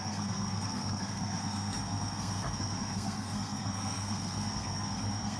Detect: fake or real fake